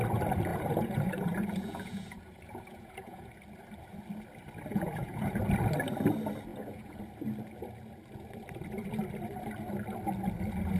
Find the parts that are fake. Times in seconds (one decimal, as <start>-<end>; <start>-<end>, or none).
0.5-3.3; 4.7-5.4; 6.5-7.0